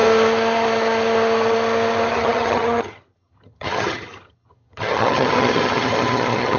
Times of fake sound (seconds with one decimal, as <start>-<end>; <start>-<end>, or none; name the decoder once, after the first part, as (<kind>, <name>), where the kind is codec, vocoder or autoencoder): 2.1-6.6 (vocoder, HiFi-GAN)